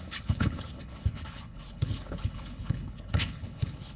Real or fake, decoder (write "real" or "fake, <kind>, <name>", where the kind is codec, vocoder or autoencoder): fake, codec, HILCodec